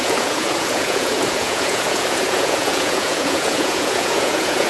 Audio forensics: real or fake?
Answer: fake